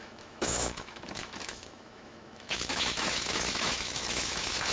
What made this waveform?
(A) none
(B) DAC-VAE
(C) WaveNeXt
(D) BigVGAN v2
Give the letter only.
B